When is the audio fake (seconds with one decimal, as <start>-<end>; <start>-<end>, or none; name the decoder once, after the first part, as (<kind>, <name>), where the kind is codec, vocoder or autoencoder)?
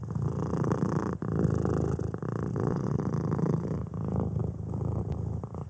2.5-3.0 (vocoder, Vocos)